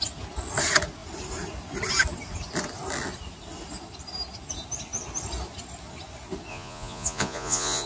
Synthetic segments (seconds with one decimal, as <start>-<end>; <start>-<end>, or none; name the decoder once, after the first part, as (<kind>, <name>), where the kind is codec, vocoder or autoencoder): 6.5-7.9 (vocoder, Vocos)